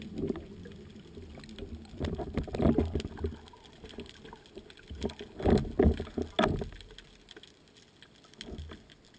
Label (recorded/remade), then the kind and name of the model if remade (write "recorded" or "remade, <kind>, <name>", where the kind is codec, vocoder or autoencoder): recorded